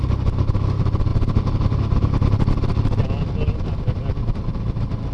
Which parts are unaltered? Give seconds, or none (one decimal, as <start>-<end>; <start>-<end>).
0.0-5.1